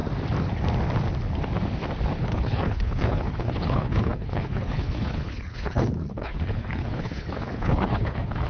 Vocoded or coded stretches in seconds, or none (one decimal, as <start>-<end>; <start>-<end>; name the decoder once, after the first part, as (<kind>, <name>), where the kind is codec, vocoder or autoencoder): 2.2-8.5 (codec, HILCodec)